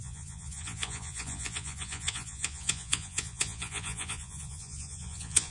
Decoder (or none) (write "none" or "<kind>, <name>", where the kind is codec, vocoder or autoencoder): vocoder, Vocos